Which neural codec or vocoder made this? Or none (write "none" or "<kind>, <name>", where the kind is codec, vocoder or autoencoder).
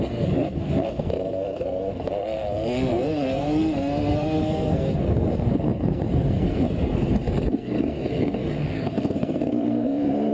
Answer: codec, SNAC